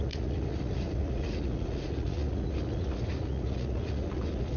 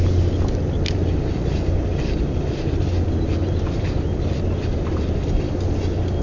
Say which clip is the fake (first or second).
first